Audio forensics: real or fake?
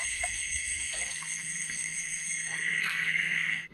fake